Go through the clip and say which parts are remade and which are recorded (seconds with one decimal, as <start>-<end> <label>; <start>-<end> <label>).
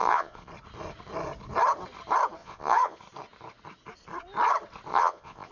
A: 0.0-0.5 remade; 0.5-2.4 recorded; 2.4-3.0 remade; 3.0-4.9 recorded; 4.9-5.5 remade